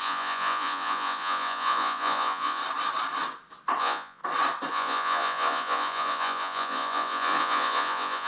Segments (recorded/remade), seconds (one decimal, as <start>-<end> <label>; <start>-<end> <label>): 0.0-2.6 remade; 2.6-3.8 recorded; 3.8-4.2 remade; 4.2-4.7 recorded; 4.7-8.3 remade